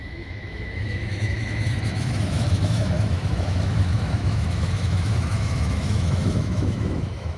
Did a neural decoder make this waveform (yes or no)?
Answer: yes